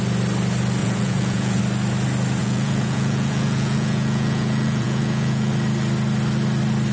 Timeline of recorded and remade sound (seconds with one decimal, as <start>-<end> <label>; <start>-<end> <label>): 0.0-0.8 recorded; 0.8-1.6 remade; 1.6-2.4 recorded; 2.4-5.5 remade; 5.5-6.9 recorded